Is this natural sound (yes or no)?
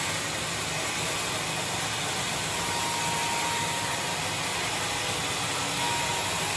yes